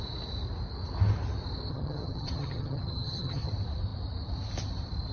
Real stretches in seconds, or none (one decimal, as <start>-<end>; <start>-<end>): 0.0-1.7; 3.5-5.1